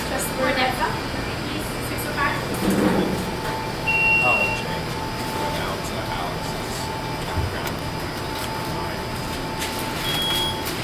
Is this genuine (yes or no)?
yes